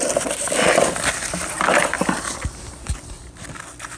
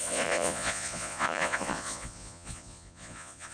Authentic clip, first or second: first